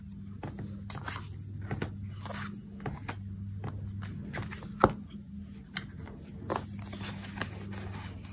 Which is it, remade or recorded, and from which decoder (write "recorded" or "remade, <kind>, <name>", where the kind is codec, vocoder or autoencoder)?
recorded